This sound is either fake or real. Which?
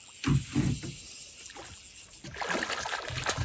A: real